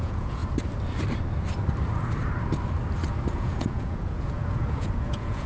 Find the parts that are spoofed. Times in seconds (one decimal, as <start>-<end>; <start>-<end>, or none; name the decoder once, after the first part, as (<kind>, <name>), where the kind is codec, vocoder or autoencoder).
0.0-0.4 (vocoder, Vocos); 3.3-5.5